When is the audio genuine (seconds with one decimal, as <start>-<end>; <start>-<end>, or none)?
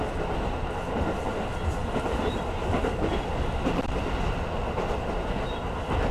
0.0-6.1